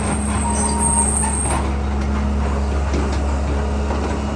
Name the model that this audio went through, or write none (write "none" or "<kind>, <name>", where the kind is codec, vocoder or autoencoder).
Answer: none